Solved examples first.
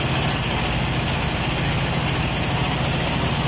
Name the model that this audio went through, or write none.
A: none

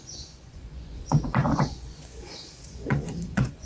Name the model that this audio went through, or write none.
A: vocoder, Vocos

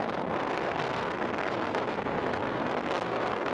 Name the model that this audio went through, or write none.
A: codec, SNAC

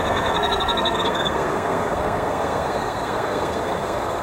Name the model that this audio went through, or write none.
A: codec, SNAC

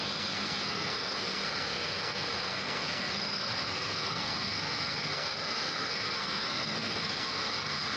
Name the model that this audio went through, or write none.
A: codec, SNAC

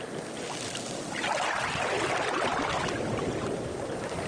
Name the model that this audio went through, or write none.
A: none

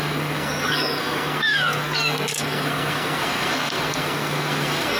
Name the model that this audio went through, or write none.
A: codec, SNAC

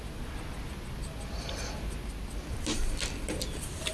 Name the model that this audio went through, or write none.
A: none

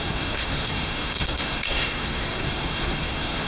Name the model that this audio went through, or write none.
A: codec, SNAC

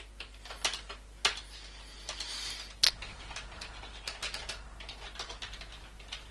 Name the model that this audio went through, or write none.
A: none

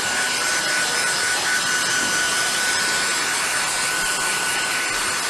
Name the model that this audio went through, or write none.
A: none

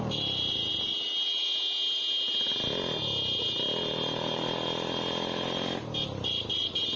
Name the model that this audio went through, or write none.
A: none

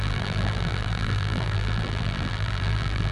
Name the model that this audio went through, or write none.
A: vocoder, BigVGAN v2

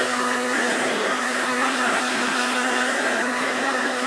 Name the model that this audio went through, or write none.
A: codec, SNAC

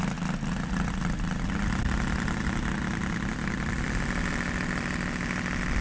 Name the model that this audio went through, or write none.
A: none